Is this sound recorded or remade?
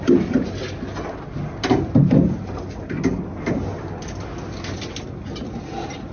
recorded